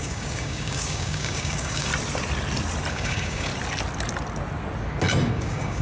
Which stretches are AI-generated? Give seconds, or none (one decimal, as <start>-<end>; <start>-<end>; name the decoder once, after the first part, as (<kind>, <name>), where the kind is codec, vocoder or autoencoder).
0.0-1.9 (codec, DAC); 2.9-3.5; 5.3-5.8